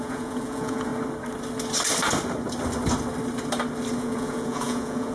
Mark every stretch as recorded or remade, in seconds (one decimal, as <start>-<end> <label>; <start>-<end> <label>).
0.0-0.9 remade; 0.9-4.0 recorded; 4.0-5.1 remade